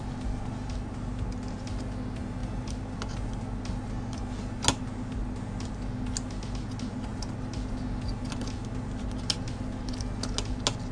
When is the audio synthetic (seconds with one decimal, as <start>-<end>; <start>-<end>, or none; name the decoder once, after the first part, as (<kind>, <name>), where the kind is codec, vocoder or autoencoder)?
none